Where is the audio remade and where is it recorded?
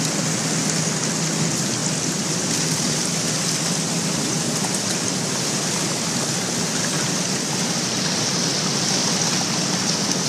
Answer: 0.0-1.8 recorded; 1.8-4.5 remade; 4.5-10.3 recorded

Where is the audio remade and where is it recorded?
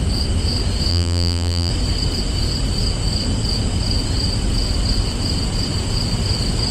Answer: 0.0-0.9 recorded; 0.9-1.7 remade; 1.7-6.7 recorded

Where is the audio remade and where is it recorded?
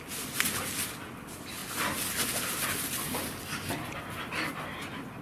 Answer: 0.0-5.2 recorded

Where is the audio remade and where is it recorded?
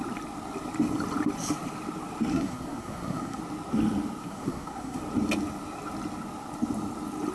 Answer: 0.0-2.3 recorded; 2.3-3.4 remade; 3.4-4.2 recorded; 4.2-5.0 remade; 5.0-7.3 recorded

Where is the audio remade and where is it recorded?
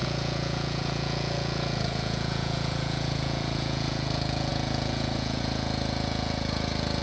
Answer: 0.0-7.0 remade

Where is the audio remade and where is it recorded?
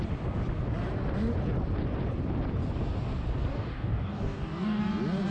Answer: 0.0-3.5 recorded; 3.5-4.8 remade; 4.8-5.3 recorded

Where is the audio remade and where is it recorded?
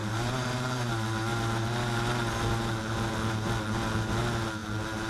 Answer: 0.0-0.9 remade; 0.9-5.1 recorded